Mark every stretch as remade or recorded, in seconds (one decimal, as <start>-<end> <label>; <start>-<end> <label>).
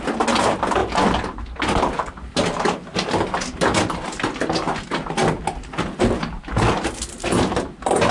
0.0-8.1 recorded